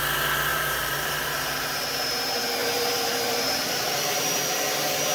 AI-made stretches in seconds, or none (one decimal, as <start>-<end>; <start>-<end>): 0.5-2.2; 2.6-4.4